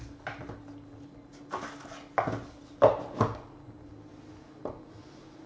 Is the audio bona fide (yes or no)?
yes